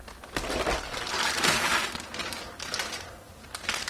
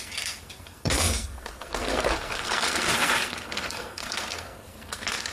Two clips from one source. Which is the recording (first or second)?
first